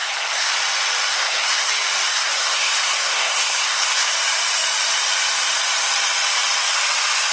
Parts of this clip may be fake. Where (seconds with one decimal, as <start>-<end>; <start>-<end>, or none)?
0.0-0.5; 1.1-1.7; 2.1-4.1